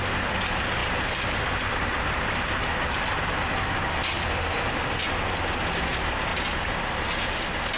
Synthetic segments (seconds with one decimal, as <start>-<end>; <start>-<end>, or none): none